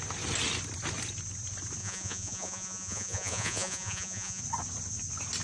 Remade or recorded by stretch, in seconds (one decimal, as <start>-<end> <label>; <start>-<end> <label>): 0.0-1.8 recorded; 1.8-4.4 remade; 4.4-5.4 recorded